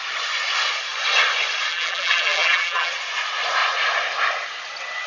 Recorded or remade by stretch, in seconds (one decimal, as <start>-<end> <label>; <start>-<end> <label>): 0.0-1.7 recorded; 1.7-2.9 remade; 2.9-5.1 recorded